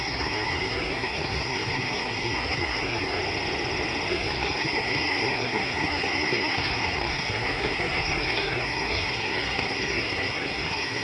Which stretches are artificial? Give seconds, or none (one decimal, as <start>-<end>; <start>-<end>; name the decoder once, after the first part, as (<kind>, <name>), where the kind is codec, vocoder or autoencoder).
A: 0.0-3.2 (codec, SNAC); 4.1-11.0